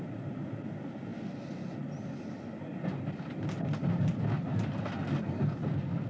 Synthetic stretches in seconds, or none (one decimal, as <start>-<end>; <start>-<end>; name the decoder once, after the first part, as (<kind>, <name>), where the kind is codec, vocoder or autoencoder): none